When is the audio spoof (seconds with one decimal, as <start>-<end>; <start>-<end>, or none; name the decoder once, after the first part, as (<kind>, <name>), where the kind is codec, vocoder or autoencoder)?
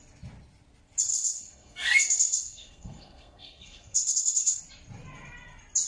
1.1-4.6 (codec, SNAC)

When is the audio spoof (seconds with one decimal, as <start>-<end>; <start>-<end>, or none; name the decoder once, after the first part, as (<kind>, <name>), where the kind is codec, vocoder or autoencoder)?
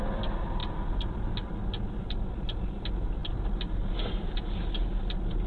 none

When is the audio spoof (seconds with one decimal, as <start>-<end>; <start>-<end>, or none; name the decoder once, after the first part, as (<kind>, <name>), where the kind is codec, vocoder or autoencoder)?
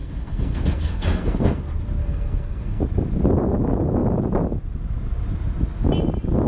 0.0-1.6 (codec, SNAC); 2.0-2.8